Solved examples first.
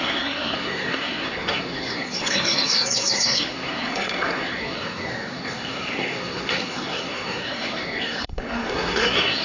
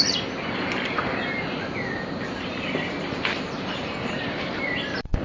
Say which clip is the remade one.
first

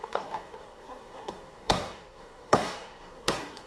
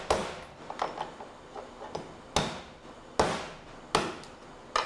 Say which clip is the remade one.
first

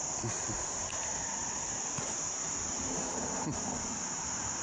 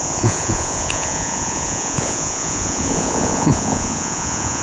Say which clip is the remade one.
second